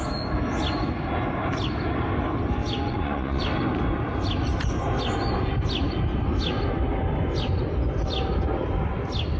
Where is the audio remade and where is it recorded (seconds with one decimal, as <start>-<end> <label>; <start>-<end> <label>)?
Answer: 0.0-2.6 recorded; 2.6-3.4 remade; 3.4-9.4 recorded